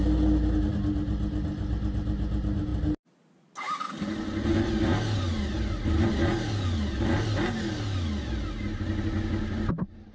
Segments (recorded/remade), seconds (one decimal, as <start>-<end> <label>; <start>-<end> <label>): 0.0-10.1 recorded